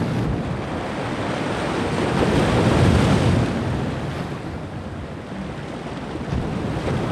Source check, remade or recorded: recorded